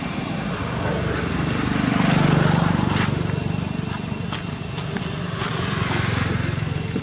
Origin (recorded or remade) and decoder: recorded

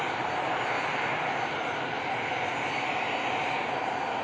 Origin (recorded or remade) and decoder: recorded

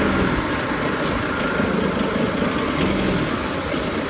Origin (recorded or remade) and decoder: recorded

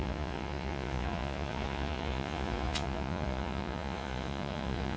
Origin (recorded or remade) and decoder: remade, vocoder, Vocos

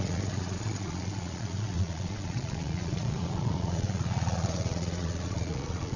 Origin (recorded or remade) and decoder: remade, vocoder, Vocos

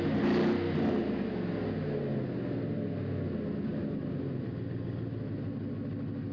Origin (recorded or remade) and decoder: recorded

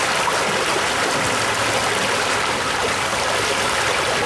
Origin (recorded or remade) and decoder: recorded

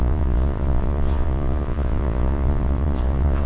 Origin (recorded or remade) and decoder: remade, vocoder, Vocos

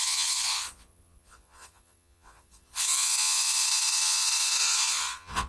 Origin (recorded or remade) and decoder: remade, vocoder, Vocos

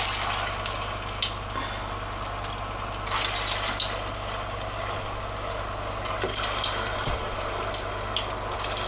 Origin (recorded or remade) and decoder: recorded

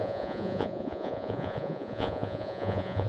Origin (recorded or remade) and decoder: remade, vocoder, Vocos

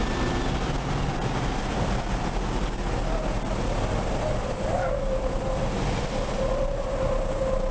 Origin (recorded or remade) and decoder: recorded